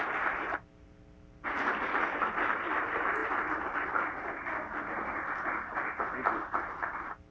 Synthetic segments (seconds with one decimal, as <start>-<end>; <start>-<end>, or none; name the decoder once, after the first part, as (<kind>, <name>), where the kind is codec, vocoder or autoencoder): none

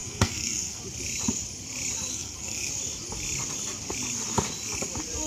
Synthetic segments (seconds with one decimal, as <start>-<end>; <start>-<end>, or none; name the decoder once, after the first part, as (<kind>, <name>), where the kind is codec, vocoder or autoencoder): 0.0-0.8 (codec, SNAC); 2.1-2.7

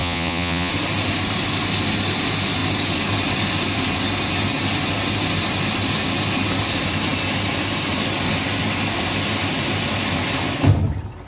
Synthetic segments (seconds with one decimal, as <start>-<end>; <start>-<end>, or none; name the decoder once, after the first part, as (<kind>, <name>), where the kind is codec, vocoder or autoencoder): 0.0-0.7 (vocoder, Vocos)

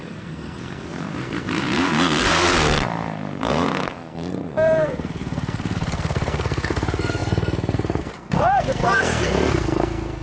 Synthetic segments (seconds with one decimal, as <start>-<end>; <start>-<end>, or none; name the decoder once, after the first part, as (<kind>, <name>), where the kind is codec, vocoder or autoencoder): 0.0-10.2 (codec, SNAC)

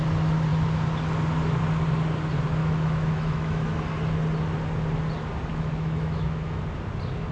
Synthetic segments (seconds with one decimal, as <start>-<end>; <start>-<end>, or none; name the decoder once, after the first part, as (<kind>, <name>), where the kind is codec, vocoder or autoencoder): 2.6-3.8 (autoencoder, DAC-VAE); 5.5-6.6